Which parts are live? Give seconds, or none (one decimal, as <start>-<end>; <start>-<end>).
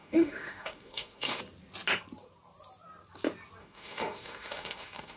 1.4-3.6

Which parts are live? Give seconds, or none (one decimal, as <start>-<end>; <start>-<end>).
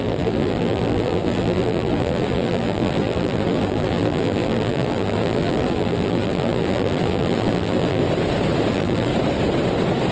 8.0-8.7; 9.1-10.1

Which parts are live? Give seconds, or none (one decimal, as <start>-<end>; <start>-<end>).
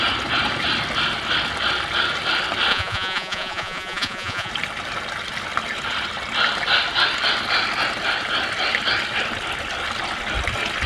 0.0-2.7; 4.5-10.9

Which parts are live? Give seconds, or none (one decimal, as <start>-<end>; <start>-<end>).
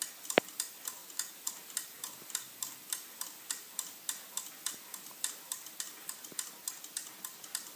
0.0-7.8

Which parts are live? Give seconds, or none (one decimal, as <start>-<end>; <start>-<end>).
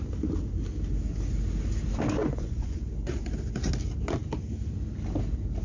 0.0-2.2; 2.9-5.6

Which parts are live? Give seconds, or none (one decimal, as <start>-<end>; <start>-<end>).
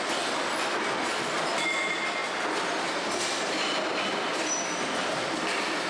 0.0-5.9